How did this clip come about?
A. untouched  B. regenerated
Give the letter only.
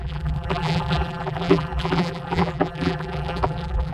B